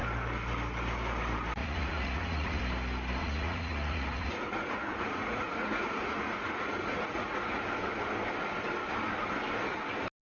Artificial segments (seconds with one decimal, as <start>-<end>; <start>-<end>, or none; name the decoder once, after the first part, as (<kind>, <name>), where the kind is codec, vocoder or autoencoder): 1.6-2.6 (vocoder, Vocos); 3.2-7.7